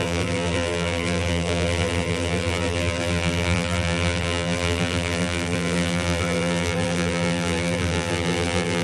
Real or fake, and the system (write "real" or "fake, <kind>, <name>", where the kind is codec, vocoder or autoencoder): fake, vocoder, BigVGAN v2